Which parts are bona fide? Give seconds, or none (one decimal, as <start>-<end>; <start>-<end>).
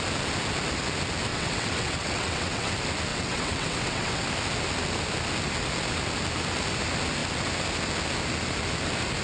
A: 0.0-1.3; 2.7-3.1; 4.2-9.2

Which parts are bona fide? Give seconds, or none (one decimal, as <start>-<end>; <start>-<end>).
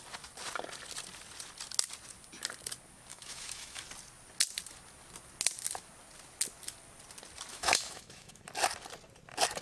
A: 0.0-3.1; 3.8-7.5; 8.4-9.6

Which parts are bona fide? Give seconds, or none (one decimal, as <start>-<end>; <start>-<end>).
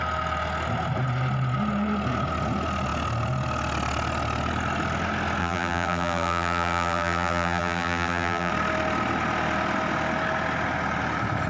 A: 0.0-5.4; 8.5-11.5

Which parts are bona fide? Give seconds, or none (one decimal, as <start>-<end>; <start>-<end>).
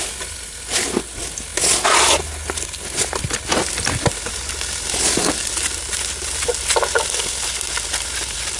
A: 0.0-8.6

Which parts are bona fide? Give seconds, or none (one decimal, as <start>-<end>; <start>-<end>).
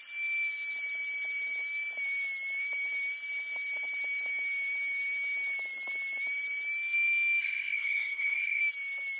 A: 0.0-7.4; 8.6-9.2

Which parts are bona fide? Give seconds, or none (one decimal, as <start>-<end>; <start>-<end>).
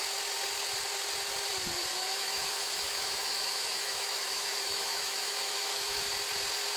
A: 0.0-1.9; 6.0-6.8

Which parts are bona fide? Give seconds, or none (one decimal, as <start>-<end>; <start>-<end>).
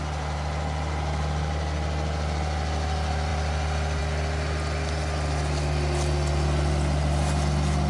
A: 0.0-7.9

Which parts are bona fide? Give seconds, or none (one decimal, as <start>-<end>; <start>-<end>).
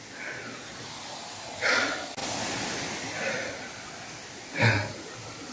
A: 0.0-5.5